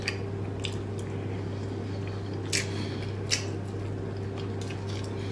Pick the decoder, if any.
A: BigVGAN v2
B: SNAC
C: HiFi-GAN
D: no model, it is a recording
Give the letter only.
D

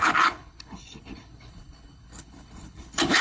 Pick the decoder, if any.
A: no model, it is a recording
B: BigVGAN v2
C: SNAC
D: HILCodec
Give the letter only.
D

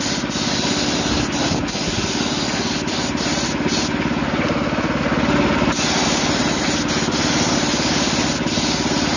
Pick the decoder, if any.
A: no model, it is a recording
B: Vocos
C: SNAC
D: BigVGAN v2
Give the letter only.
A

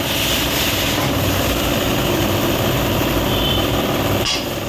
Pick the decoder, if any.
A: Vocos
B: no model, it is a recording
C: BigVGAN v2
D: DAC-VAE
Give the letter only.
B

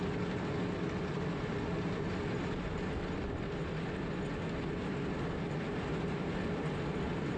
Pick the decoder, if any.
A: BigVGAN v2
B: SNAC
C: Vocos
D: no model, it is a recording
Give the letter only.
D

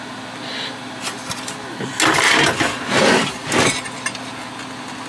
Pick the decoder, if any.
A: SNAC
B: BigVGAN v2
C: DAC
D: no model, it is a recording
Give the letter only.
D